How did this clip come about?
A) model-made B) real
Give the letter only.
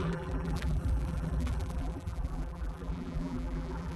A